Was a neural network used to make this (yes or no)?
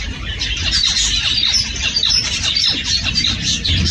no